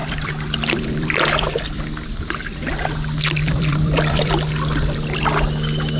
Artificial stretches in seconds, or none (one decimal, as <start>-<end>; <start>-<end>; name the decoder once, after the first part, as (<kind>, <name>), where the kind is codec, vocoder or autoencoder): 0.0-1.8 (vocoder, BigVGAN v2); 3.4-4.3